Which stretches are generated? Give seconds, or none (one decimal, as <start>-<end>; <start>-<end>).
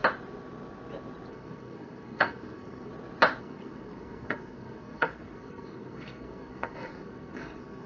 1.3-2.9; 3.4-7.9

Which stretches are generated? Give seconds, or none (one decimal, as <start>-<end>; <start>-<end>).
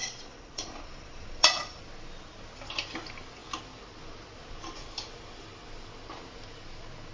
0.0-1.8